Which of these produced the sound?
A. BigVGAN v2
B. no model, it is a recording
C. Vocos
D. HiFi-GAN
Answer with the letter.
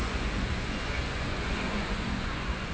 C